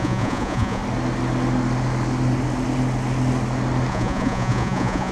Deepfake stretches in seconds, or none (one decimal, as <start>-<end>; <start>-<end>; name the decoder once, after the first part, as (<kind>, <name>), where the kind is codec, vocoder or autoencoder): 0.0-0.8 (vocoder, Vocos); 3.9-5.1